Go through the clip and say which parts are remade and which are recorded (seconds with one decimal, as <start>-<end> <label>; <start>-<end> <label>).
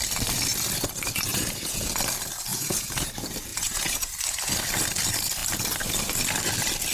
0.0-1.3 recorded; 1.3-1.9 remade; 1.9-2.5 recorded; 2.5-3.1 remade; 3.1-3.5 recorded; 3.5-4.1 remade; 4.1-6.9 recorded